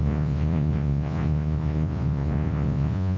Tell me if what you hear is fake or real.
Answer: fake